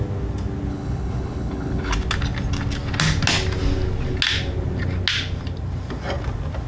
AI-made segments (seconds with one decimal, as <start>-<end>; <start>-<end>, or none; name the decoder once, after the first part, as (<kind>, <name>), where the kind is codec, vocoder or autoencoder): 0.7-1.9 (codec, HILCodec)